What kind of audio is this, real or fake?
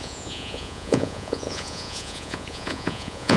fake